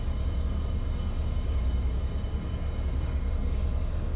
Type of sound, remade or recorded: remade